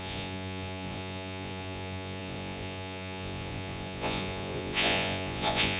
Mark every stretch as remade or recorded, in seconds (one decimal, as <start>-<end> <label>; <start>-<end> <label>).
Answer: 0.0-5.8 remade

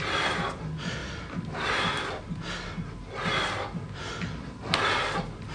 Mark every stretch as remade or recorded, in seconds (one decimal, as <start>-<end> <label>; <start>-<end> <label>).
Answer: 0.0-5.5 recorded

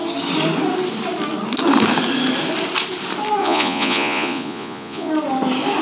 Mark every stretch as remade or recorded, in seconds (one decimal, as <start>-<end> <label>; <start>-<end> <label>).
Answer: 0.0-3.4 recorded; 3.4-5.1 remade; 5.1-5.8 recorded

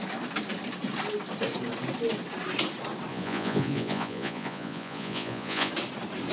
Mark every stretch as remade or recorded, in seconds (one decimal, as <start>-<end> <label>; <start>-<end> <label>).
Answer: 0.0-3.1 recorded; 3.1-5.7 remade; 5.7-6.3 recorded